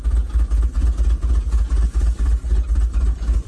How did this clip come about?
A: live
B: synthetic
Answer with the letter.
A